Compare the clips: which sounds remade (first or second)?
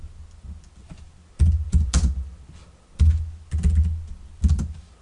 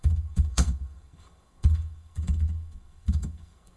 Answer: second